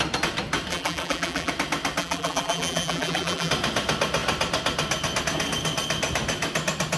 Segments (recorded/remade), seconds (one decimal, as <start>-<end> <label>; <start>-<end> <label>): 0.0-0.7 recorded; 0.7-1.5 remade; 1.5-2.0 recorded; 2.0-3.5 remade; 3.5-7.0 recorded